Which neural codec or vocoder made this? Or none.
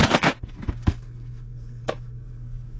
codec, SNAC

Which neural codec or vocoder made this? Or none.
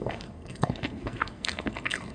codec, SNAC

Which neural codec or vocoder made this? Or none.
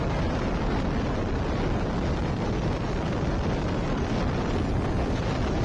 none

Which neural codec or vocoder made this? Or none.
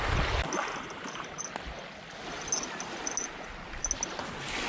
none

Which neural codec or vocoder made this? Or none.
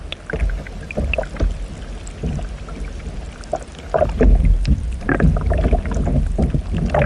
none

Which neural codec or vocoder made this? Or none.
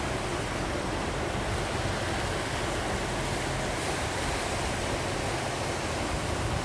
none